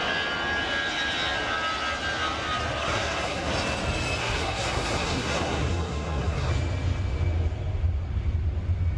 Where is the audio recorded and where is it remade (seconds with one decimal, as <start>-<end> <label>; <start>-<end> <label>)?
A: 0.0-2.8 recorded; 2.8-3.5 remade; 3.5-4.2 recorded; 4.2-6.5 remade; 6.5-9.0 recorded